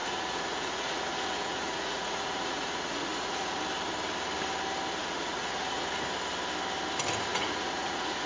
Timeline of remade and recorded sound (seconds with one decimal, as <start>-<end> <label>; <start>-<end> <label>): 0.0-3.6 remade; 3.6-5.0 recorded; 5.0-5.9 remade; 5.9-7.3 recorded; 7.3-8.3 remade

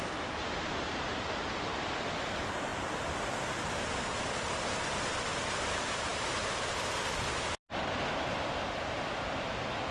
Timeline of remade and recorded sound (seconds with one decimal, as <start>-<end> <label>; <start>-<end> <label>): 0.0-9.9 recorded

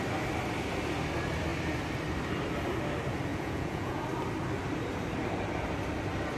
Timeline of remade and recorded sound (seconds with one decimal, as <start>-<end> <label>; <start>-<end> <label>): 0.0-3.3 recorded; 3.3-4.0 remade; 4.0-6.4 recorded

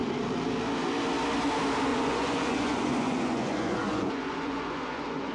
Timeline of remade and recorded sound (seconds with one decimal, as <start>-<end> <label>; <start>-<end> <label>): 0.0-1.9 recorded; 1.9-5.3 remade

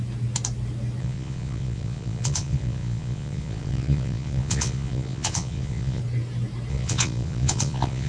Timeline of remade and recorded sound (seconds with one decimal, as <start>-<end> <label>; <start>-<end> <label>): 0.0-1.0 recorded; 1.0-6.0 remade; 6.0-6.7 recorded; 6.7-8.1 remade

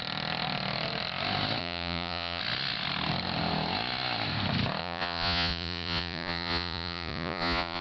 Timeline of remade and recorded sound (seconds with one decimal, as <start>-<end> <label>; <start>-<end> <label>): 0.0-1.6 recorded; 1.6-2.4 remade; 2.4-4.8 recorded; 4.8-7.8 remade